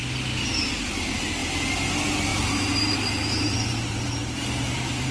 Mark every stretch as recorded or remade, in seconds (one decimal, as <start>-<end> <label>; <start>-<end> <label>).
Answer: 0.0-2.3 recorded; 2.3-5.1 remade

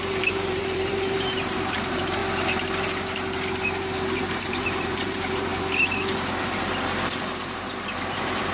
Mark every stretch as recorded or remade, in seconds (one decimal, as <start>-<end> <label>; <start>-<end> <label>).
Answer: 0.0-2.2 remade; 2.2-4.2 recorded; 4.2-5.5 remade; 5.5-6.4 recorded; 6.4-8.5 remade

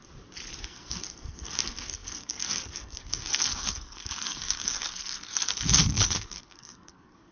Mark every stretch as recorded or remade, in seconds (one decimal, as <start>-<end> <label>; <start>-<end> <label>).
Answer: 0.0-0.6 recorded; 0.6-7.3 remade

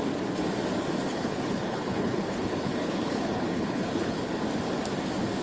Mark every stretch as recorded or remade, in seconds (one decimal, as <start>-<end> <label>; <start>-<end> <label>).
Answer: 0.0-1.1 recorded; 1.1-4.3 remade; 4.3-5.4 recorded

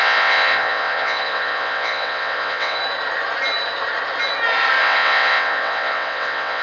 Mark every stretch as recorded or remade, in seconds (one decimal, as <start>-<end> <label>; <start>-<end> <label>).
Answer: 0.0-2.8 remade; 2.8-4.8 recorded; 4.8-6.6 remade